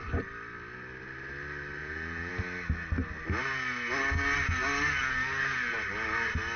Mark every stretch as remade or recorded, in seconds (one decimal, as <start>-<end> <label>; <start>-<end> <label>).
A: 0.0-1.8 recorded; 1.8-2.3 remade; 2.3-6.6 recorded